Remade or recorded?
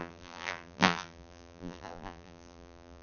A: remade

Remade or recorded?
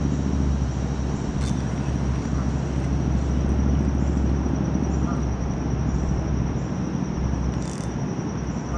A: recorded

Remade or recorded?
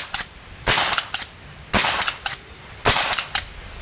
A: recorded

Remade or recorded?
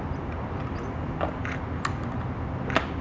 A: recorded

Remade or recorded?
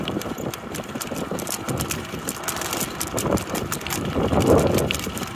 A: remade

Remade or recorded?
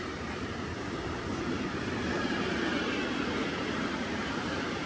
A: remade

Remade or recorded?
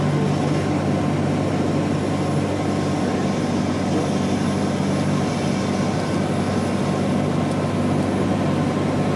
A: recorded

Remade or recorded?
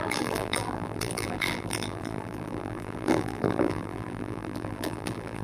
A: remade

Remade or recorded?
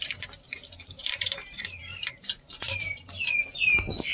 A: remade